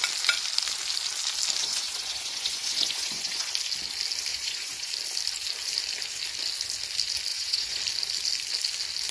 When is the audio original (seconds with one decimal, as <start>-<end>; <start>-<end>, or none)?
0.0-1.6; 3.5-4.3; 4.9-7.3; 7.8-9.1